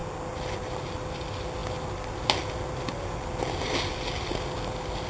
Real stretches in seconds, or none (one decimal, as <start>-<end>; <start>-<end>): 0.0-5.1